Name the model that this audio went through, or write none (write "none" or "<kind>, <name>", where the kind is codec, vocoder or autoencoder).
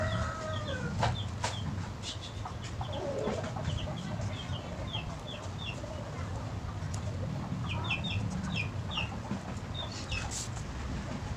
none